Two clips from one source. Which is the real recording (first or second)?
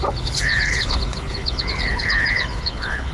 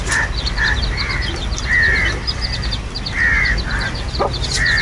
second